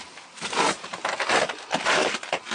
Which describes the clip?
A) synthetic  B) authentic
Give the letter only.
A